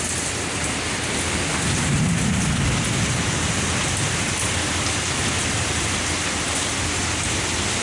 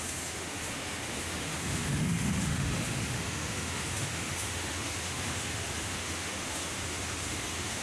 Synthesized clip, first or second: second